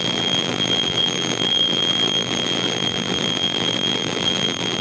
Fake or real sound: fake